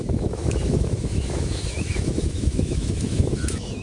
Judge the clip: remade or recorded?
remade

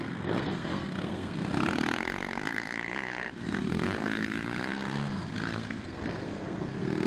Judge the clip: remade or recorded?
remade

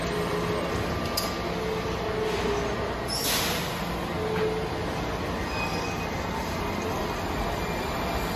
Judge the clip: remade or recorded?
recorded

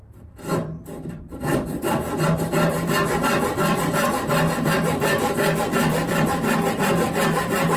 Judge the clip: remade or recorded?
remade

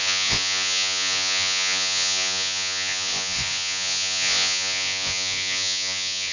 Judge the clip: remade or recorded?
remade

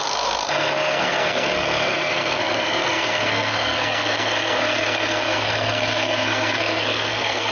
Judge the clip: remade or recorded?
remade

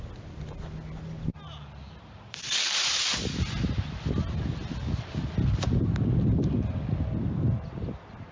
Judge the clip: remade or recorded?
recorded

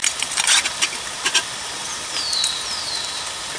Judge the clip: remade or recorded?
recorded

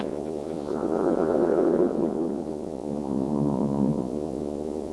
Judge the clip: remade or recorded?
remade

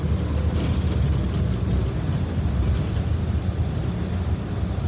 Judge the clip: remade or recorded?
recorded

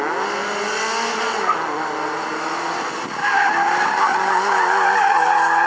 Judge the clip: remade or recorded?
recorded